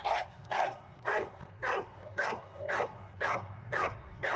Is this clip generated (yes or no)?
yes